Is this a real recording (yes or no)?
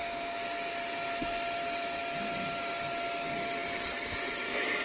yes